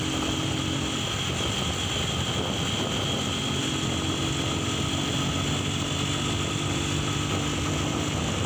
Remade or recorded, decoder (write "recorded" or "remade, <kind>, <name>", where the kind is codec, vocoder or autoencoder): recorded